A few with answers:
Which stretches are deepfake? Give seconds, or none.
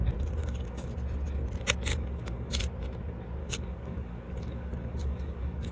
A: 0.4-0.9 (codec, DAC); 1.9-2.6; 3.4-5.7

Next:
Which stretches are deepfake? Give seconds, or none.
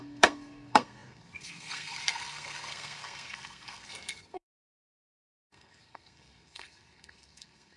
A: 0.0-7.8 (codec, SNAC)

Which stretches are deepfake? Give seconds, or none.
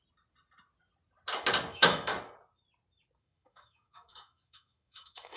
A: 1.7-2.1 (autoencoder, DAC-VAE); 3.2-5.4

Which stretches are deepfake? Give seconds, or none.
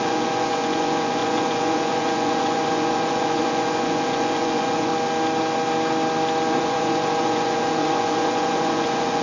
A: 0.0-4.9 (vocoder, Vocos); 6.5-9.2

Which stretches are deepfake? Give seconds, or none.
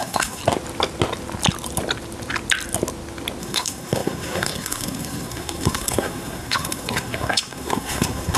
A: 0.0-0.4 (codec, SNAC); 3.4-8.4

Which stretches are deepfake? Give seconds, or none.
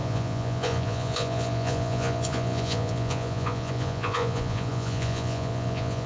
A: 0.0-6.1 (vocoder, Vocos)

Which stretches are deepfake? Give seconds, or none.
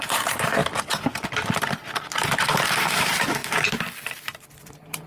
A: 0.0-0.6 (vocoder, BigVGAN v2); 2.8-3.4; 4.5-5.1